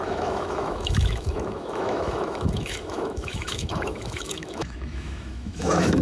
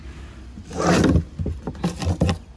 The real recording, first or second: second